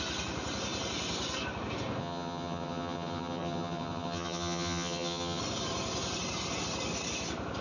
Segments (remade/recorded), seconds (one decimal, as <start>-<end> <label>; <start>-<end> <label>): 0.0-2.0 recorded; 2.0-5.4 remade; 5.4-7.6 recorded